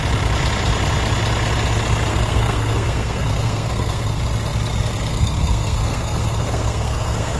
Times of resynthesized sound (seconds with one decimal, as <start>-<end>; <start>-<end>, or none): 2.1-4.2; 5.1-7.4